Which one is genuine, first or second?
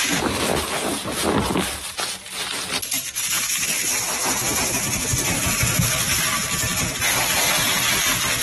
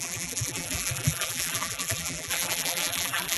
first